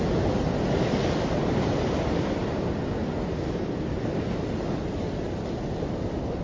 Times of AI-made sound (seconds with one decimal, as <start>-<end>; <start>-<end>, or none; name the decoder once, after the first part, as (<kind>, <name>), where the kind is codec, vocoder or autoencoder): none